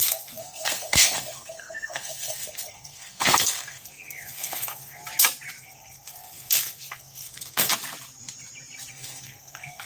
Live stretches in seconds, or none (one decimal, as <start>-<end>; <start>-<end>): 5.0-5.6; 7.7-8.9